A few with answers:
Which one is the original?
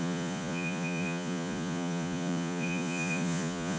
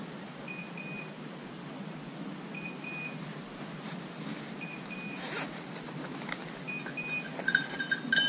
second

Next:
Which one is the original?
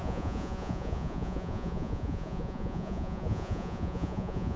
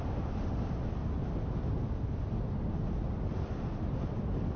second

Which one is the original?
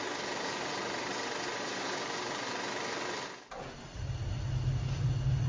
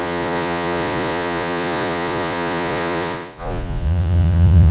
first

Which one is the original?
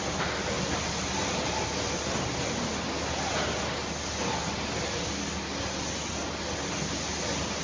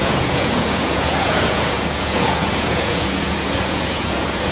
first